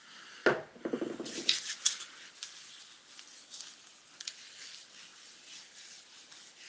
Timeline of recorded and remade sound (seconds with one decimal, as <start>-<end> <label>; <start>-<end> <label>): 0.0-6.7 recorded